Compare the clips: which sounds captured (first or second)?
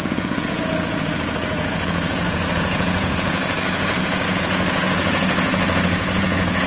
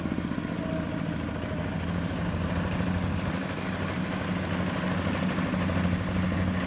second